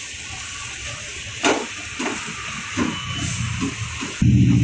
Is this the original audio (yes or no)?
yes